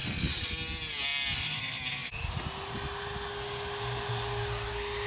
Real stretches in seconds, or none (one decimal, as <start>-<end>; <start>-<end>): 0.5-5.1